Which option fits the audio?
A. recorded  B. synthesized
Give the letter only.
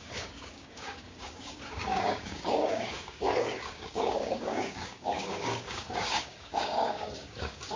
B